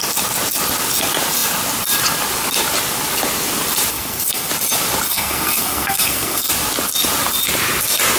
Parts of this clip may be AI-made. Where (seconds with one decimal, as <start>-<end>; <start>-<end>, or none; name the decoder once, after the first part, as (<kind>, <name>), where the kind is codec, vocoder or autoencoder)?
3.9-4.5 (codec, SNAC); 5.1-6.5